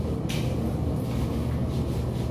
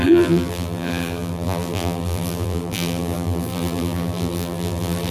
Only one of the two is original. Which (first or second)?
first